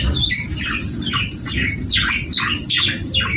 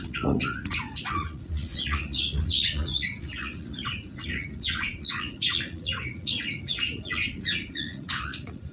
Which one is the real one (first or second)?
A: first